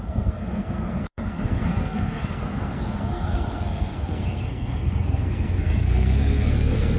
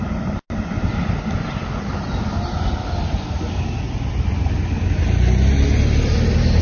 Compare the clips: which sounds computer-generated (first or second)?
first